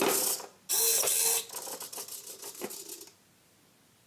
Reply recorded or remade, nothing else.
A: recorded